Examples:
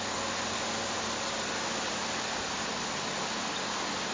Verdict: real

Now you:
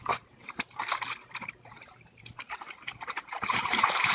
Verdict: fake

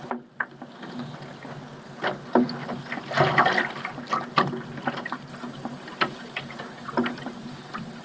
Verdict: real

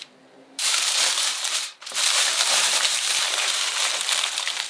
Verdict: fake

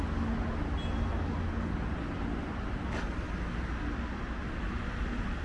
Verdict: real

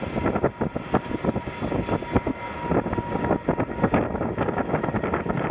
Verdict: real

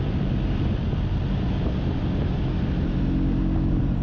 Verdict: real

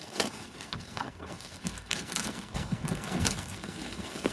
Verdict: fake